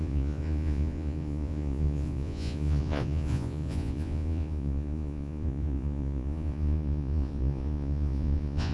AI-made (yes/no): yes